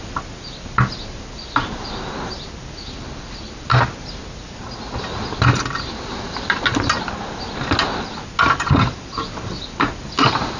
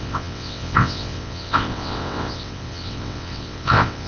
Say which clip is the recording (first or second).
first